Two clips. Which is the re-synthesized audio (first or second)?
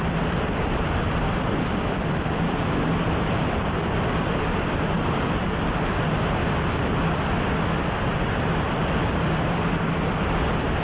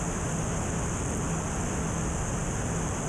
first